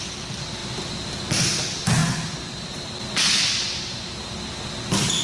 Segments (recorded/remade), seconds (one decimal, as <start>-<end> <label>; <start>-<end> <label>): 0.0-5.2 recorded